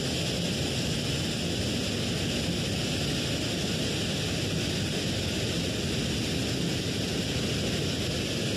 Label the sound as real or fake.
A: real